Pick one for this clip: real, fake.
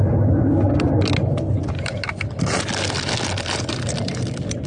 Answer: real